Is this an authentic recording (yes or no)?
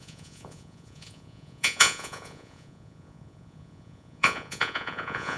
no